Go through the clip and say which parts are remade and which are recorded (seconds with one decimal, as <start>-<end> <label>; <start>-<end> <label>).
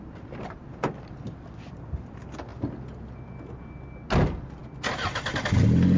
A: 0.0-6.0 recorded